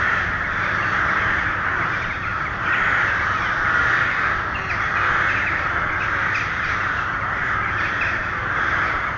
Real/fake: real